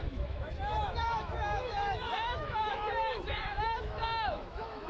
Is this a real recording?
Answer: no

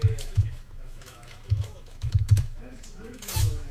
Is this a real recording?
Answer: no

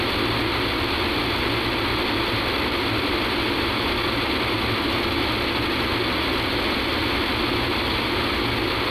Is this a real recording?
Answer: yes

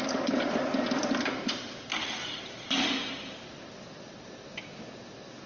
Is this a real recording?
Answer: yes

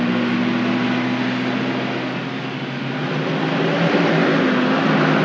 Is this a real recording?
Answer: yes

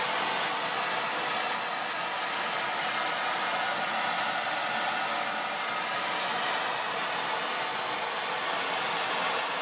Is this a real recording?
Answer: yes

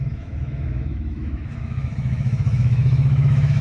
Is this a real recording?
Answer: no